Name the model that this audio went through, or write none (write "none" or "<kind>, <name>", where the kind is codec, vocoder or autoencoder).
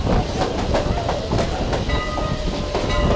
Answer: none